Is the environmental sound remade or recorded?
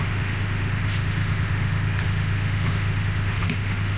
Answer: remade